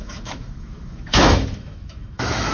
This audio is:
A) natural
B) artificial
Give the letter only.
B